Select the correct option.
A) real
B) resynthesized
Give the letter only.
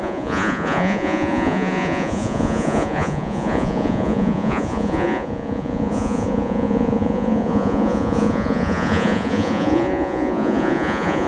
B